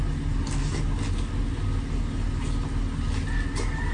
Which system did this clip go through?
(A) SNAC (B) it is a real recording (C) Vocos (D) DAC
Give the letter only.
B